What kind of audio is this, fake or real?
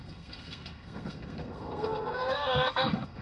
fake